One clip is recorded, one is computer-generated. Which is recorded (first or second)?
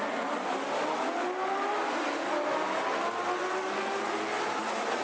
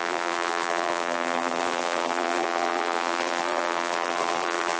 first